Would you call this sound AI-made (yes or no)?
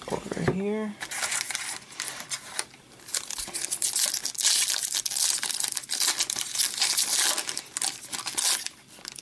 no